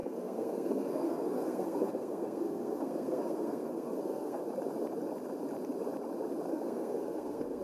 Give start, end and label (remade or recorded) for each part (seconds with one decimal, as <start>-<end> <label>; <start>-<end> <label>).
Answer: 0.0-4.4 remade; 4.4-6.5 recorded; 6.5-7.6 remade